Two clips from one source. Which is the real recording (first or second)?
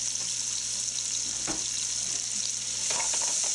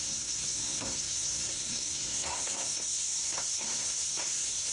first